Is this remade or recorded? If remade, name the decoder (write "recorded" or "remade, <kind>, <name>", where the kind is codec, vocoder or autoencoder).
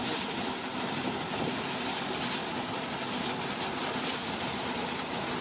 recorded